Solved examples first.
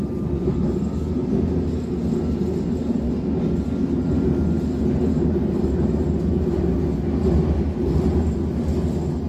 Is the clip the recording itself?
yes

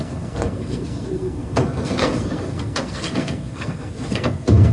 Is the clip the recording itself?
no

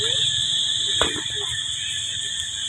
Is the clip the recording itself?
yes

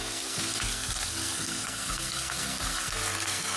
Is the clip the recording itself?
no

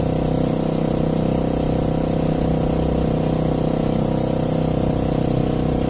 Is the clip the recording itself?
yes